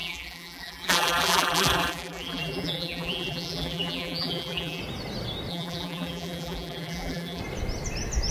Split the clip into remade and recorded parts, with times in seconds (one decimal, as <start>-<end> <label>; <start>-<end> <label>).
0.0-4.8 remade; 4.8-5.5 recorded; 5.5-7.4 remade; 7.4-8.3 recorded

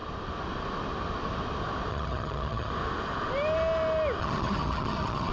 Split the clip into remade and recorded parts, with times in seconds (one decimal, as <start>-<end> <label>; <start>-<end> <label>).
0.0-1.9 recorded; 1.9-2.7 remade; 2.7-4.2 recorded; 4.2-5.3 remade

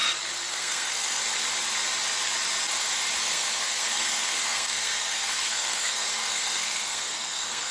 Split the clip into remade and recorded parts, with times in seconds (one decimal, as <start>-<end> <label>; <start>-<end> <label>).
0.0-0.5 recorded; 0.5-1.2 remade; 1.2-3.2 recorded; 3.2-7.7 remade

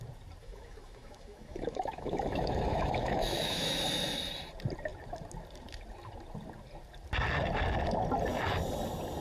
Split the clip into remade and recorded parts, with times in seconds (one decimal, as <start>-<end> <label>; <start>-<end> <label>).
0.0-0.4 recorded; 0.4-3.8 remade; 3.8-9.2 recorded

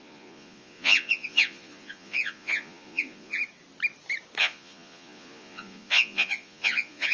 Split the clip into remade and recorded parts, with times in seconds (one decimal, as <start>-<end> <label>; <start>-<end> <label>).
0.0-3.4 remade; 3.4-4.4 recorded; 4.4-7.1 remade

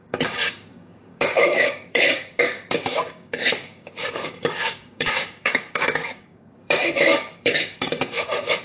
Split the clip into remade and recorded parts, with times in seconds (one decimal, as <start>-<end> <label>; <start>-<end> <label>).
0.0-8.6 remade

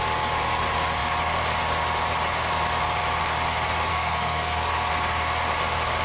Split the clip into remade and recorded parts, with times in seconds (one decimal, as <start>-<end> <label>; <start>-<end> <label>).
0.0-3.9 recorded; 3.9-4.9 remade; 4.9-6.0 recorded